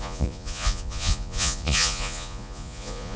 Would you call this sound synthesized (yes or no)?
yes